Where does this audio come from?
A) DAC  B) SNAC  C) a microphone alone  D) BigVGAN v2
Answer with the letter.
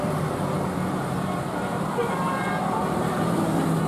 D